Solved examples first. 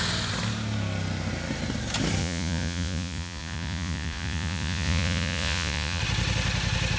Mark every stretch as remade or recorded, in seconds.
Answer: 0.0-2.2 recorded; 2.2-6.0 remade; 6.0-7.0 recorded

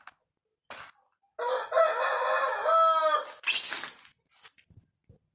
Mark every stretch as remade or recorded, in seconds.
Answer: 0.0-5.3 recorded

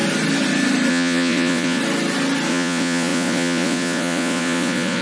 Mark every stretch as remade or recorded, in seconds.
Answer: 0.0-0.9 recorded; 0.9-1.8 remade; 1.8-2.5 recorded; 2.5-5.0 remade

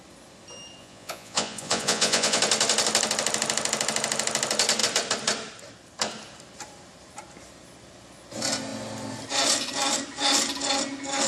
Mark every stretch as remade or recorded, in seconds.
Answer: 0.0-0.8 recorded; 0.8-2.4 remade; 2.4-11.3 recorded